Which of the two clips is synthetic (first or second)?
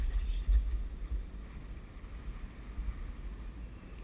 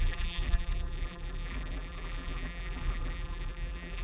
second